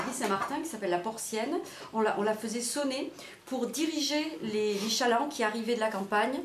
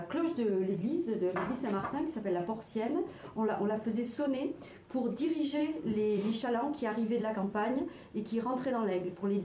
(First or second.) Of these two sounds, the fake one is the second